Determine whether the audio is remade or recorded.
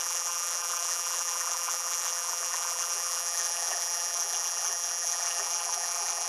remade